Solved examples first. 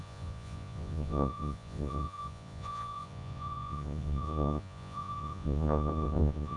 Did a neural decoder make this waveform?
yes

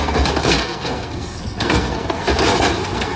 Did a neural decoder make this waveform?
yes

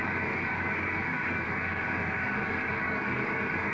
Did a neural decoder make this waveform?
yes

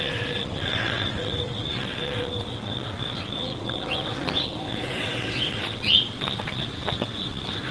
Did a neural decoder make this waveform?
yes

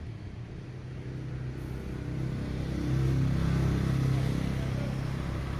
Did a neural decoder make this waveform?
no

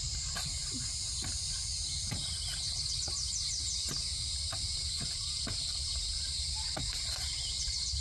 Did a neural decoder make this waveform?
yes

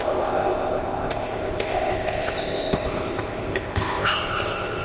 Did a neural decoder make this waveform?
yes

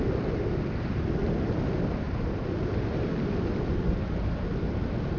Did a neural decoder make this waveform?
no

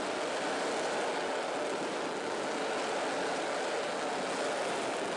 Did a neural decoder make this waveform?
no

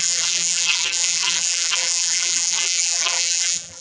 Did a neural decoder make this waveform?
yes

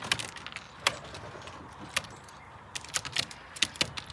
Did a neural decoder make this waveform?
no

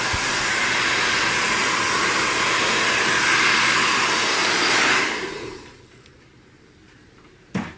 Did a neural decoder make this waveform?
no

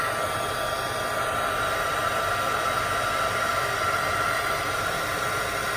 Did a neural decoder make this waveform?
no